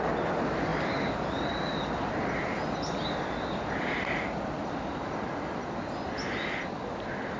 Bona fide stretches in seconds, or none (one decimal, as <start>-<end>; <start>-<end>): 0.0-7.4

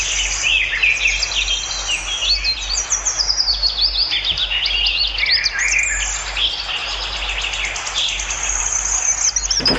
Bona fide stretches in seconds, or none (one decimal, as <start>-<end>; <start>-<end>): 0.0-9.8

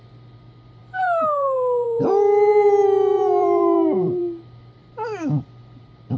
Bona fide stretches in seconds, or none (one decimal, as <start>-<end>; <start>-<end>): 0.0-0.8; 4.2-4.8; 5.8-6.2

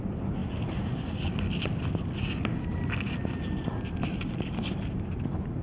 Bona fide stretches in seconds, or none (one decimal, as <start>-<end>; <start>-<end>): 0.0-5.6

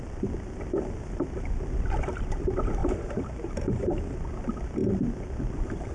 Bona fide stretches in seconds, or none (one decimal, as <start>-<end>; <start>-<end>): 0.0-2.8; 4.0-5.9

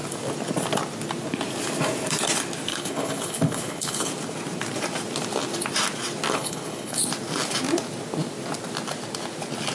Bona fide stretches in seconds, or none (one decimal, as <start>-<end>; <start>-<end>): 0.0-2.7; 4.1-6.3; 7.0-9.7

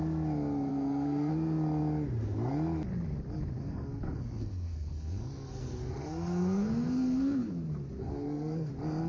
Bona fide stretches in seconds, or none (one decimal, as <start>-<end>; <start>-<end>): 0.0-0.7; 1.3-3.6; 7.5-8.0; 8.7-9.1

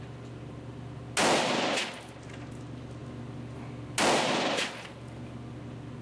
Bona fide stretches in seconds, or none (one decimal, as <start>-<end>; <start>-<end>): 0.0-6.0